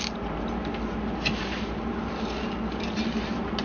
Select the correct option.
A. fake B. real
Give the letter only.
B